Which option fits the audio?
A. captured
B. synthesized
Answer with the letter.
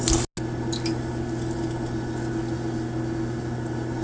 A